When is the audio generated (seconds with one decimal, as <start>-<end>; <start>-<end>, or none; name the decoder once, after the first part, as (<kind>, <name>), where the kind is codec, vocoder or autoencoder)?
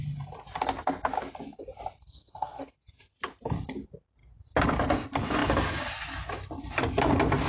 2.0-2.7 (codec, SNAC)